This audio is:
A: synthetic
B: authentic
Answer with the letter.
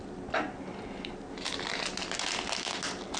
B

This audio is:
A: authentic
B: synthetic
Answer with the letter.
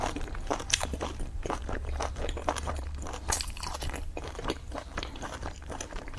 B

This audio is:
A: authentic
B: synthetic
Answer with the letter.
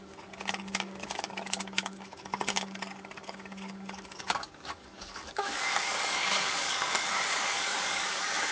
B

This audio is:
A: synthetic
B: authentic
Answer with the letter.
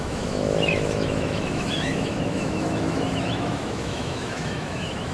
A